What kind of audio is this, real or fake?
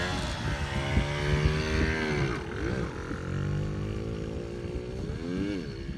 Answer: real